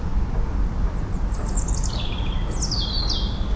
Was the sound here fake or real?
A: real